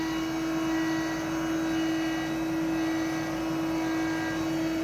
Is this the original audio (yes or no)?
yes